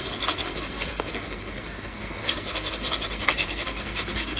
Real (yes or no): no